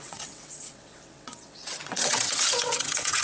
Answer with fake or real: fake